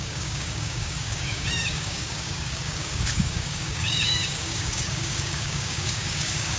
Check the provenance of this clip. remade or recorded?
remade